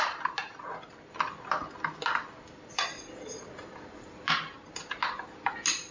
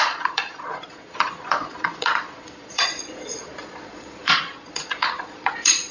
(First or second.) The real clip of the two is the first